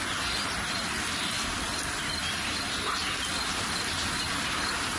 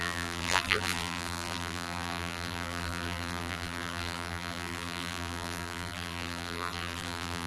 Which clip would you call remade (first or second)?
second